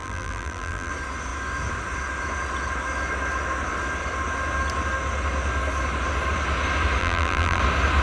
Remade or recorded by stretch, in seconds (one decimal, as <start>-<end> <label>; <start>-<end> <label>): 0.0-0.9 remade; 0.9-7.0 recorded; 7.0-7.6 remade; 7.6-8.0 recorded